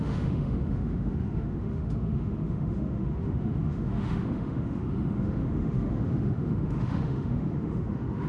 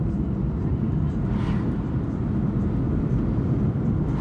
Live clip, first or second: second